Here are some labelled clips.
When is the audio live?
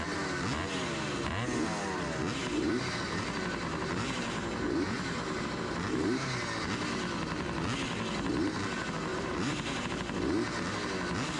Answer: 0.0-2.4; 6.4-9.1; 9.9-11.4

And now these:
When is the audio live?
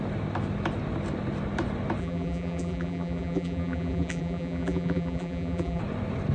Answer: 0.0-2.0; 5.8-6.3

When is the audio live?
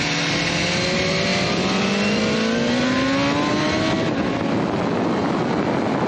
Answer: 0.0-6.1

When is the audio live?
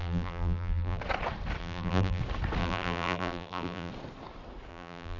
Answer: 1.0-1.6; 2.2-2.6; 3.9-4.7